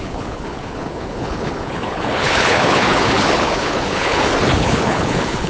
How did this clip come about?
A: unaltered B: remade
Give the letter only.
B